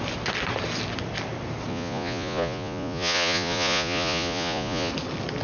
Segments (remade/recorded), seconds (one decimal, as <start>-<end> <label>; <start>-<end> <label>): 0.0-1.7 recorded; 1.7-4.9 remade; 4.9-5.4 recorded